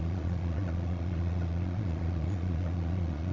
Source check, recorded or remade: remade